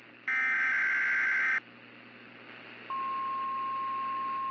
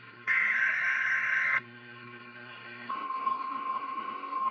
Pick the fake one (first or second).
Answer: second